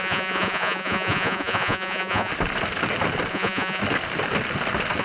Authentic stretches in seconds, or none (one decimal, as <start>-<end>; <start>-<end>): 2.3-3.3; 3.8-5.0